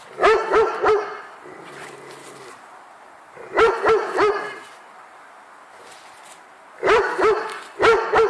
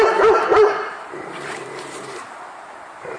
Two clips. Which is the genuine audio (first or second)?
first